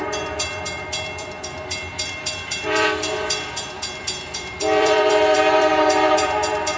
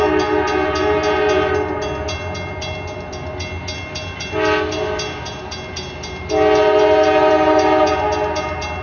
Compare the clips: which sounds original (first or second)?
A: second